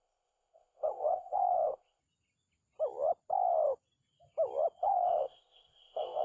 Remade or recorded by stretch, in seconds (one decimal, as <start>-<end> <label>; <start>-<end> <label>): 0.0-2.0 remade; 2.0-4.8 recorded; 4.8-6.2 remade